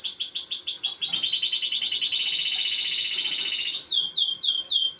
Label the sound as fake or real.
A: real